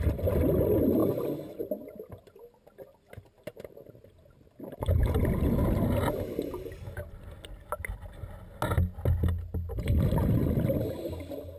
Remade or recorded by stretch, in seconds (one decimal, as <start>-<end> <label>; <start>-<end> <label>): 0.0-11.6 recorded